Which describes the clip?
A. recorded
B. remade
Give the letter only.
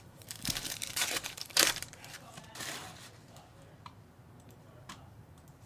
B